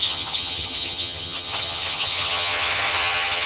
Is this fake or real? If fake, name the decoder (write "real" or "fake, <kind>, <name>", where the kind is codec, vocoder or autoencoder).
fake, vocoder, HiFi-GAN